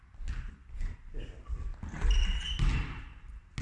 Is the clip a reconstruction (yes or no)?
no